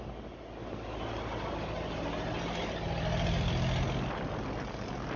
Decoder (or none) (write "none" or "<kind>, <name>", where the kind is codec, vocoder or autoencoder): none